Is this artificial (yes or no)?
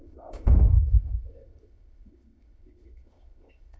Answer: yes